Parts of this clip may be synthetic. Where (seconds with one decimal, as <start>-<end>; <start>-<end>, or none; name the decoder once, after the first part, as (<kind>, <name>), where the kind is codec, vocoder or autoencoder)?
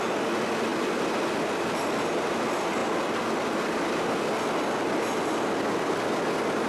none